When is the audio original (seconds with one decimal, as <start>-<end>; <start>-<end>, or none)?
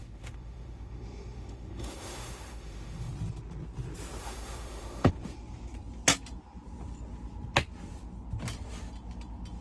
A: 3.1-4.2; 5.1-9.6